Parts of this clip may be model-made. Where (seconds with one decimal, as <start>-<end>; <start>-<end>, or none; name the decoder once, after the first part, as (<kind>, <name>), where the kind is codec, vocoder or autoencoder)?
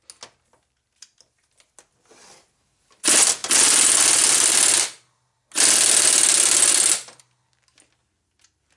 none